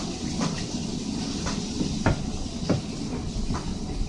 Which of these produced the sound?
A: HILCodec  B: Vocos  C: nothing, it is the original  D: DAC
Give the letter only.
C